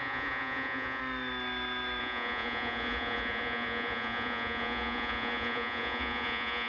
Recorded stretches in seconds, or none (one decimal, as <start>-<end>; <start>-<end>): 1.0-2.0